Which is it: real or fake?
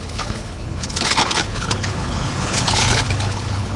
fake